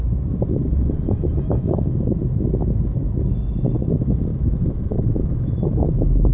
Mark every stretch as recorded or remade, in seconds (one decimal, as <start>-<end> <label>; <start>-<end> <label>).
0.0-4.3 recorded; 4.3-5.5 remade; 5.5-6.3 recorded